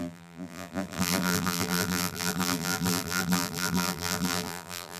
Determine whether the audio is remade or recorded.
remade